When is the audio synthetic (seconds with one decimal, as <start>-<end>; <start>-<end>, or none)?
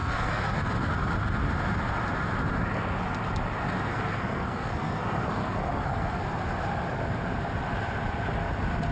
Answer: 0.0-0.7; 3.9-6.2